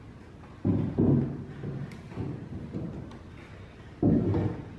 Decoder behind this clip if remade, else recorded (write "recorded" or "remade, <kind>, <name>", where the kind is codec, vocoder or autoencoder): recorded